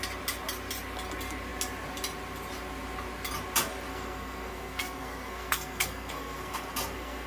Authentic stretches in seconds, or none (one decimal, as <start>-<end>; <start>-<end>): 0.0-3.9